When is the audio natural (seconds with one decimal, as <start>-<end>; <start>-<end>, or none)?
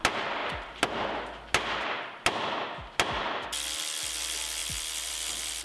0.0-5.6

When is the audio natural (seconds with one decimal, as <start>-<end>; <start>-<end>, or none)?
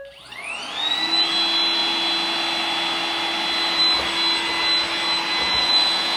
0.0-5.3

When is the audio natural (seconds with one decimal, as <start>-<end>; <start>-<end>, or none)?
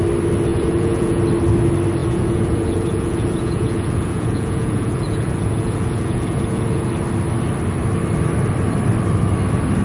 0.0-0.5; 1.2-2.0; 6.9-9.8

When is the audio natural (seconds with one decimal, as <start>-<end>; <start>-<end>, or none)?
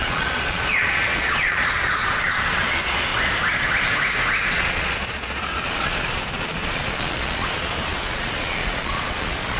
3.1-4.5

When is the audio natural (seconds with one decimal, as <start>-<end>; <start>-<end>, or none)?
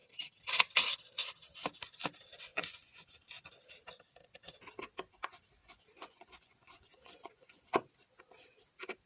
0.0-2.5; 3.1-5.6; 7.8-9.1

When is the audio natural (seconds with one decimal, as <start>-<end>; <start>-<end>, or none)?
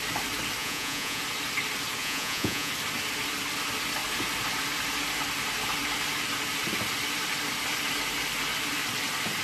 0.0-0.6; 1.2-2.0; 2.7-9.4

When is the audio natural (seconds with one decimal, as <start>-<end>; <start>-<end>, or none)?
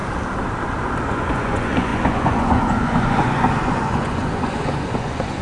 0.0-1.1